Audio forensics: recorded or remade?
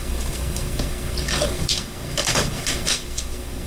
remade